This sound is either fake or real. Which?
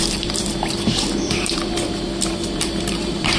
fake